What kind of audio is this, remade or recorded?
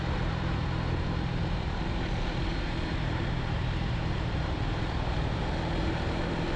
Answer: remade